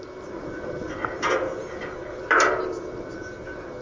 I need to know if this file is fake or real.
real